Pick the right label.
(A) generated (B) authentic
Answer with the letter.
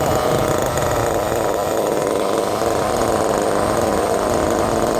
B